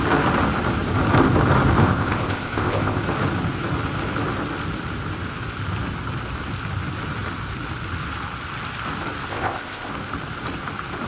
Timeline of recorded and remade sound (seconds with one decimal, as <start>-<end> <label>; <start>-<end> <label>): 0.0-1.8 recorded; 1.8-3.0 remade; 3.0-9.3 recorded; 9.3-9.9 remade; 9.9-11.1 recorded